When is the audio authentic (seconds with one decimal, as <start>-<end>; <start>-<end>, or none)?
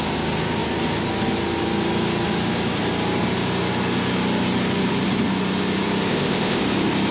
0.0-6.1; 6.6-7.1